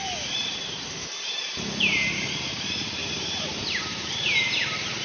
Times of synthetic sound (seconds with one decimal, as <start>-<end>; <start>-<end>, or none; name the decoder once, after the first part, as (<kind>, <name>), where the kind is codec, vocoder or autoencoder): 0.0-5.0 (vocoder, BigVGAN v2)